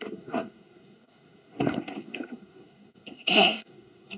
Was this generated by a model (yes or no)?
yes